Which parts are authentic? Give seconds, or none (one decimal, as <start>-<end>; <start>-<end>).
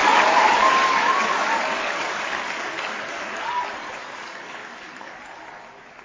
3.6-4.0; 5.3-6.0